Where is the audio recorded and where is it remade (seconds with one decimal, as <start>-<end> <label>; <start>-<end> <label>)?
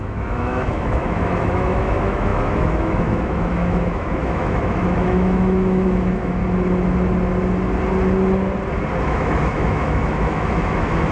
0.0-6.4 remade; 6.4-9.0 recorded; 9.0-11.1 remade